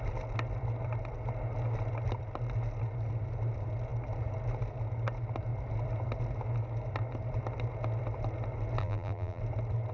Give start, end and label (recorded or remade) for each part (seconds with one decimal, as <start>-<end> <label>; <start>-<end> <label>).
0.0-8.8 recorded; 8.8-9.4 remade; 9.4-9.9 recorded